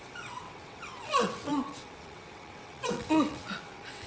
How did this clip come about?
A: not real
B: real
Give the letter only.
A